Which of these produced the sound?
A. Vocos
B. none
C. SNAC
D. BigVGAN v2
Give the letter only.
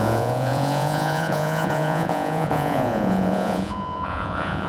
A